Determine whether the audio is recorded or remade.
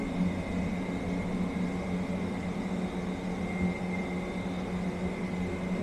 recorded